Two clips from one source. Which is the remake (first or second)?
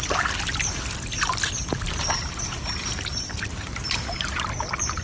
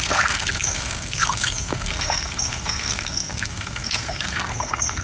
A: second